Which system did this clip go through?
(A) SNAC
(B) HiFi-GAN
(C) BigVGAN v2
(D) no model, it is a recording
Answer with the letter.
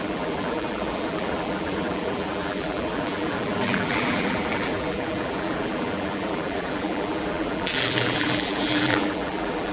C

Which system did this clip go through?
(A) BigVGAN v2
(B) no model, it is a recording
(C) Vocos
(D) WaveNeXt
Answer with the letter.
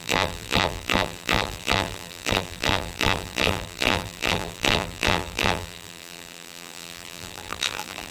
A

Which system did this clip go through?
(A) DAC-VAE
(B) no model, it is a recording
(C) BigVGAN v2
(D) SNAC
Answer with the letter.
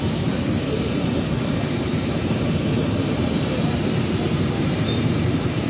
C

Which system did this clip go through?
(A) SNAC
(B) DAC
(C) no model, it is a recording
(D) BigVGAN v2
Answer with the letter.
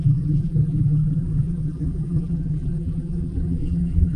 D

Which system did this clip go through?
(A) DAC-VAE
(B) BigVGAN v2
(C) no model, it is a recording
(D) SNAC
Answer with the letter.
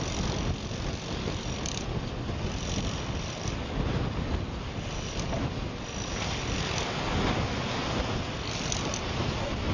C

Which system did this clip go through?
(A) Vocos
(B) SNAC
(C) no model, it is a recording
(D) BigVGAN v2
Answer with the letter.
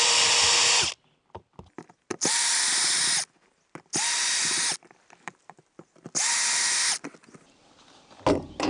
C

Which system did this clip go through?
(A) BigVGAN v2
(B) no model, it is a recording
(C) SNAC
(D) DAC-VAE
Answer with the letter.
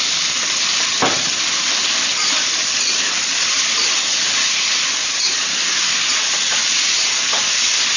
B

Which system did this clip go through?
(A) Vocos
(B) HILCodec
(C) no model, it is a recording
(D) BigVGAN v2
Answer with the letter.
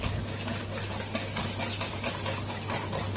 C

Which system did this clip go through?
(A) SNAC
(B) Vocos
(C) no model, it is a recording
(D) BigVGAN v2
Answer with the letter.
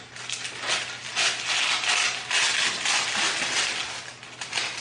C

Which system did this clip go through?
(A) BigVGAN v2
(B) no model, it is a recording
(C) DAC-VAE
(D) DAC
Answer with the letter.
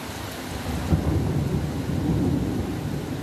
B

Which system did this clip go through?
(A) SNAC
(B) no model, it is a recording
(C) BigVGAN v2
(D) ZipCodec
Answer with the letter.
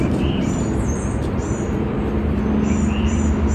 C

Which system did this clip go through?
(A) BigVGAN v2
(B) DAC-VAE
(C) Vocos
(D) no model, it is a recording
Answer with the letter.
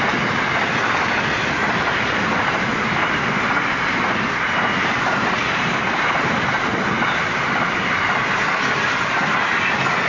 D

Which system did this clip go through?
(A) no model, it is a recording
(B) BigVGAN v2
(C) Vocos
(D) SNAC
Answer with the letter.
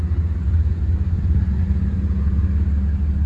A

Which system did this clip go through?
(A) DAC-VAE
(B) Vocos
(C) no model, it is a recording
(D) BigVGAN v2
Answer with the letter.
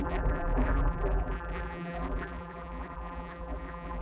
D